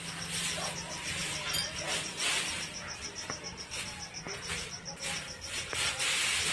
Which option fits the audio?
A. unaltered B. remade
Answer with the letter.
A